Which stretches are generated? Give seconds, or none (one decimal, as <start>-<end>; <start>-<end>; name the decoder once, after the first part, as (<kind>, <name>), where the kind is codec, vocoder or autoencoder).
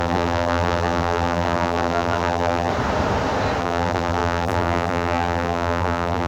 0.0-2.7 (vocoder, BigVGAN v2); 3.6-6.3